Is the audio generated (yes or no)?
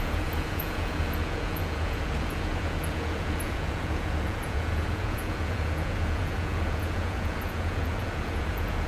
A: yes